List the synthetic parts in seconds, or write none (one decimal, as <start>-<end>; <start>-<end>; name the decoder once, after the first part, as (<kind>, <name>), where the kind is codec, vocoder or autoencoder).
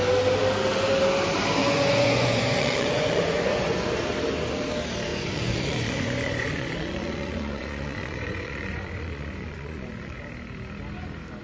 1.6-3.9 (vocoder, Vocos); 5.1-10.2